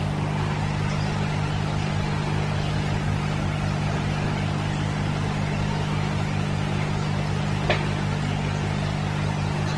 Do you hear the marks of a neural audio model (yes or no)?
no